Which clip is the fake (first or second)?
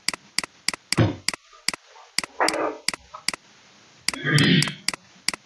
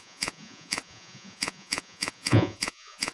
second